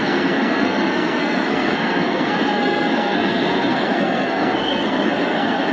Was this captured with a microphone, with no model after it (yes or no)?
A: no